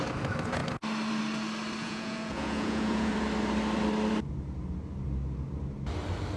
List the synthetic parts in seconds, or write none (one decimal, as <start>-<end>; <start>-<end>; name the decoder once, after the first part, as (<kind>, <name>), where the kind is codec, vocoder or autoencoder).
1.8-3.1 (vocoder, Vocos)